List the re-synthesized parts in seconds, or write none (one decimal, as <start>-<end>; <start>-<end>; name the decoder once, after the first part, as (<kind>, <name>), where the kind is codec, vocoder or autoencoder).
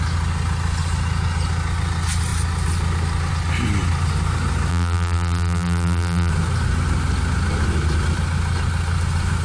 4.7-6.3 (vocoder, BigVGAN v2)